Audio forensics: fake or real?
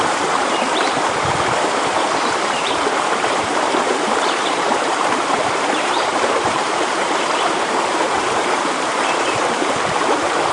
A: fake